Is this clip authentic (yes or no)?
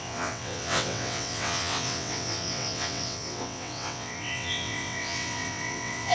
no